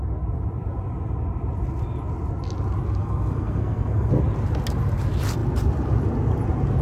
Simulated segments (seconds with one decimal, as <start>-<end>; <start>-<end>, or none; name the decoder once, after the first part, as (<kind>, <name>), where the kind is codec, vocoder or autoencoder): 3.0-4.1 (codec, SNAC)